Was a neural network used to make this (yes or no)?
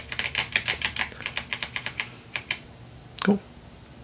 no